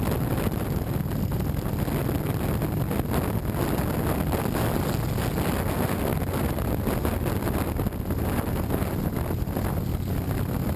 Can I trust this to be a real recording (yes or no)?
yes